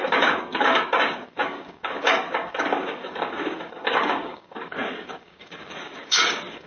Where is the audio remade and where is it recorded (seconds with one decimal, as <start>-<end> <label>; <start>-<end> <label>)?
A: 0.0-6.7 remade